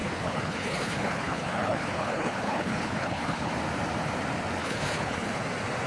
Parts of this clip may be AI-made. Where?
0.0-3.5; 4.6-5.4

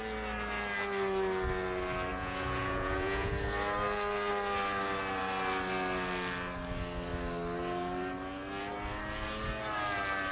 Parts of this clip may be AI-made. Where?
2.1-3.3

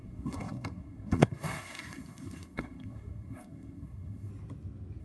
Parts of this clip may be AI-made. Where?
0.0-4.3

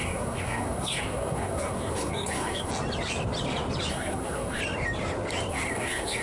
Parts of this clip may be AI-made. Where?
0.0-2.7; 3.9-4.6; 5.5-6.2

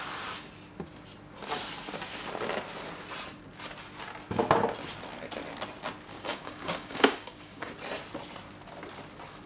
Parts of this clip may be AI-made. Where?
6.1-7.7

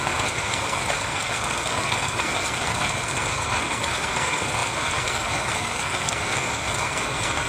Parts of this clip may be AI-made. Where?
0.0-7.5

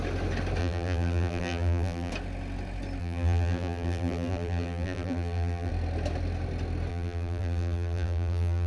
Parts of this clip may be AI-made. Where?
0.6-2.1; 3.0-5.7; 6.9-8.7